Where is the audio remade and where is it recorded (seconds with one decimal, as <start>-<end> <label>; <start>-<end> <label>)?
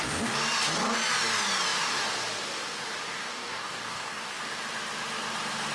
0.0-3.3 recorded; 3.3-4.4 remade; 4.4-5.7 recorded